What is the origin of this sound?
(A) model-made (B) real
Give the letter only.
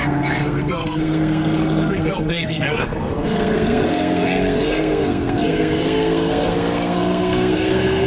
A